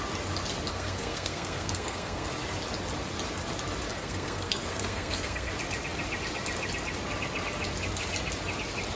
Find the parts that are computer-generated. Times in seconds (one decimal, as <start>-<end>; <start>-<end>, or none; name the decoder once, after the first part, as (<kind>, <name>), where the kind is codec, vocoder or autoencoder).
0.7-2.3 (codec, SNAC); 3.9-5.5